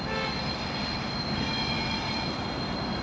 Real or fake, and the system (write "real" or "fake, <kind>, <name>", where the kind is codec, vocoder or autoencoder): real